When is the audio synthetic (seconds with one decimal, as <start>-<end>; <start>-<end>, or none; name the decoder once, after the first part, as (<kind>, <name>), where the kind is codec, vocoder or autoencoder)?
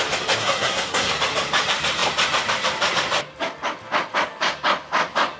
0.4-1.1 (codec, SNAC)